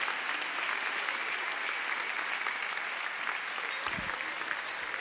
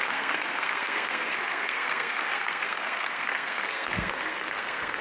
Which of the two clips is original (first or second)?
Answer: first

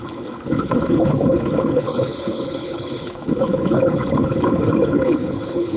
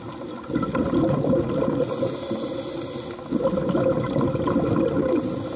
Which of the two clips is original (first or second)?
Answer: second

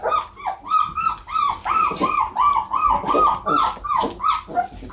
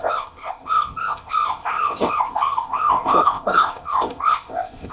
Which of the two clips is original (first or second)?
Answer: first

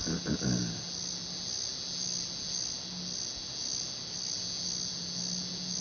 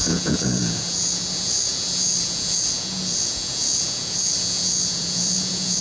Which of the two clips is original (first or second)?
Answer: first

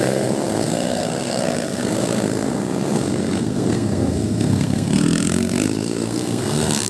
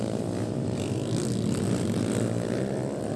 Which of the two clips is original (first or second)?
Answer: second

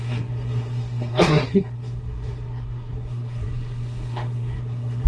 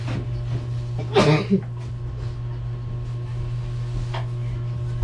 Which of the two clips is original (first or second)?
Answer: second